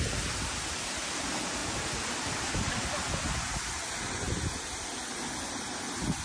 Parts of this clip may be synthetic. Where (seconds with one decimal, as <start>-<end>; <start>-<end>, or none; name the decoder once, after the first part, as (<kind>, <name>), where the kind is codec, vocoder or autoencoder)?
none